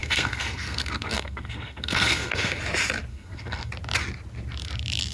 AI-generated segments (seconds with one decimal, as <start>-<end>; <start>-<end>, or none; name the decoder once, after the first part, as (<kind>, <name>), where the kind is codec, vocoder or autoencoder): 0.0-2.6 (codec, SNAC); 3.1-3.7